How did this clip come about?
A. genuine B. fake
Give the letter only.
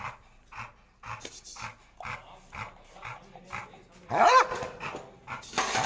A